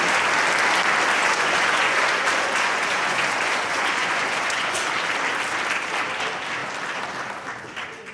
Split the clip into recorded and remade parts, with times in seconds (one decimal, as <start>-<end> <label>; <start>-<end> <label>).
0.0-1.2 recorded; 1.2-4.8 remade; 4.8-8.1 recorded